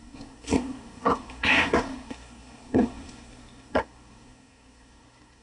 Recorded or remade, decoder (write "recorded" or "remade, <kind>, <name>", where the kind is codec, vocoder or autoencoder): remade, codec, SNAC